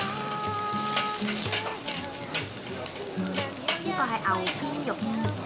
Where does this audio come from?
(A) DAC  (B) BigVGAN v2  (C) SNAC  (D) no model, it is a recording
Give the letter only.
D